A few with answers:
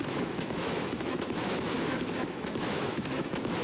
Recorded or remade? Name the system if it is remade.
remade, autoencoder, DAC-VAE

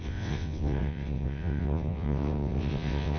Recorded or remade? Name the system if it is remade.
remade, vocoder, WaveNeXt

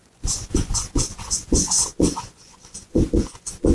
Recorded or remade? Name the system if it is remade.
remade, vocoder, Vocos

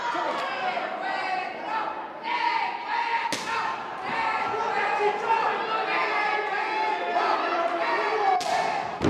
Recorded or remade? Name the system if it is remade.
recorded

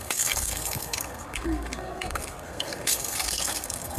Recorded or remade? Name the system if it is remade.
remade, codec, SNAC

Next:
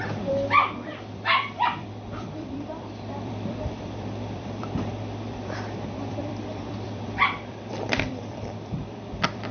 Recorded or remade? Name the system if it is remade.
remade, vocoder, BigVGAN v2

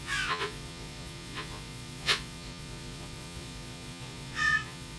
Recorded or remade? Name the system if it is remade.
remade, vocoder, Vocos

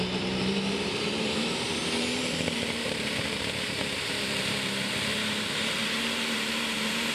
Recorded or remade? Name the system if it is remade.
remade, vocoder, BigVGAN v2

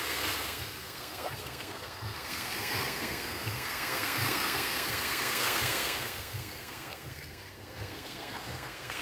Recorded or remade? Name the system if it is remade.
remade, codec, SNAC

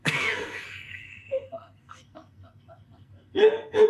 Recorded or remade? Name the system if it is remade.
remade, codec, SNAC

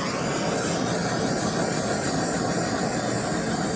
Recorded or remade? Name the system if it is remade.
recorded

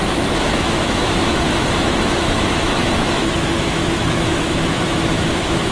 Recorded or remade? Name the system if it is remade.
remade, autoencoder, DAC-VAE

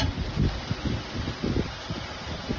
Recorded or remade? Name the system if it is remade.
recorded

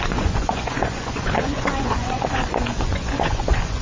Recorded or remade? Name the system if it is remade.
remade, vocoder, Vocos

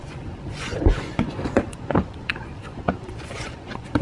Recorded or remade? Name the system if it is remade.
remade, vocoder, Vocos